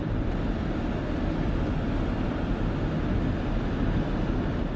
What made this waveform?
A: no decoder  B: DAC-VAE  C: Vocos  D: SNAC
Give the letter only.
A